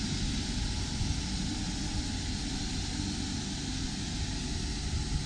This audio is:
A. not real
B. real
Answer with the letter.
B